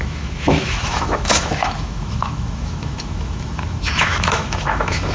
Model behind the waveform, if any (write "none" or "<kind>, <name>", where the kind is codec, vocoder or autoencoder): autoencoder, DAC-VAE